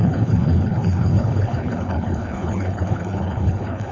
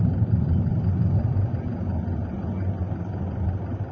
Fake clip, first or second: first